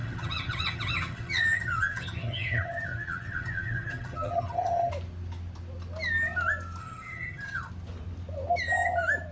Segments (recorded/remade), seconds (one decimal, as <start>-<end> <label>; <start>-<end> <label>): 0.0-4.9 remade; 4.9-6.8 recorded; 6.8-7.7 remade; 7.7-9.3 recorded